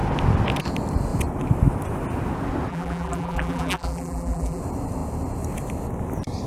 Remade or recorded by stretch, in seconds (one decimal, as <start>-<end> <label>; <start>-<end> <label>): 0.0-2.7 recorded; 2.7-4.6 remade; 4.6-6.5 recorded